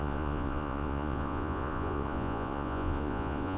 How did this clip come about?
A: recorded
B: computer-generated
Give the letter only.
B